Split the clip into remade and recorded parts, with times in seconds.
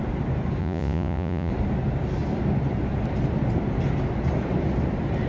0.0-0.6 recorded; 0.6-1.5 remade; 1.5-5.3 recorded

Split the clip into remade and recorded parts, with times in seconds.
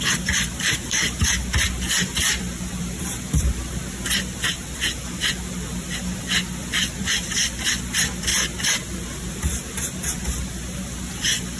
0.0-8.3 remade; 8.3-11.1 recorded; 11.1-11.6 remade